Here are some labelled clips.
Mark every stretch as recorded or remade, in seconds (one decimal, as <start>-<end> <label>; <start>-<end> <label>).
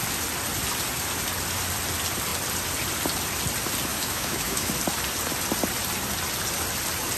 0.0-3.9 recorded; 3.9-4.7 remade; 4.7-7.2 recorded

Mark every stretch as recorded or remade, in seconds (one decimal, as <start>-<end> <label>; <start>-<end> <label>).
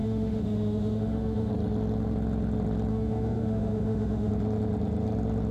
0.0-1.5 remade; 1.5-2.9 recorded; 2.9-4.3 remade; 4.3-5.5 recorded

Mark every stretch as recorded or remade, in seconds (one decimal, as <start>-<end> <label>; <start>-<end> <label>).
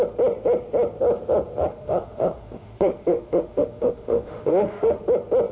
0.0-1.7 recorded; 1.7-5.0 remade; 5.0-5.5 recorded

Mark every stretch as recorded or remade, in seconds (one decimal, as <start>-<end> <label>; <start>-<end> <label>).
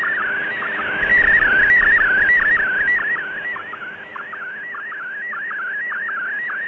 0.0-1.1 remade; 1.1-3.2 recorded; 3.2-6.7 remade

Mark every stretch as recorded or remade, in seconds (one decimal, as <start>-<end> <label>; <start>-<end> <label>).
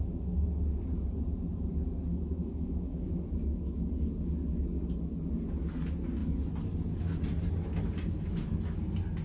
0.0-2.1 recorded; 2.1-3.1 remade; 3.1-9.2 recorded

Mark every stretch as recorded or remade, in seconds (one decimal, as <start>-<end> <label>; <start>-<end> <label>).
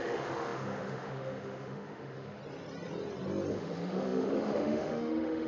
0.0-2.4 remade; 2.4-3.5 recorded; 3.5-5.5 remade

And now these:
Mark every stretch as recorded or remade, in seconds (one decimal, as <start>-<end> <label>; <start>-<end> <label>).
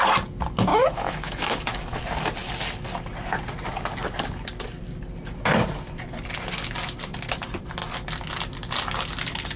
0.0-0.7 recorded; 0.7-2.0 remade; 2.0-9.6 recorded